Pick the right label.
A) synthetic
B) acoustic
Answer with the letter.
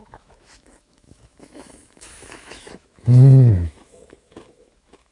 A